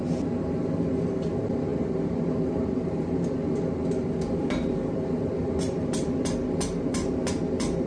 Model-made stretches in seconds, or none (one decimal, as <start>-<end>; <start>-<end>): none